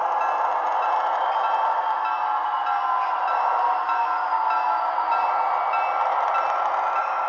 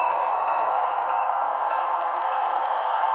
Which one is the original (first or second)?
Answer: first